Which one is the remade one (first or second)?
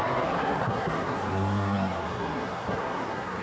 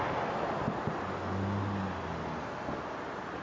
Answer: first